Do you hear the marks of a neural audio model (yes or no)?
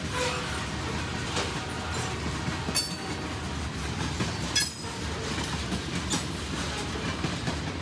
no